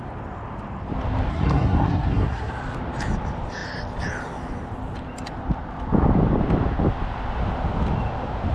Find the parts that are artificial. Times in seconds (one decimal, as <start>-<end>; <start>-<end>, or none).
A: 1.3-2.5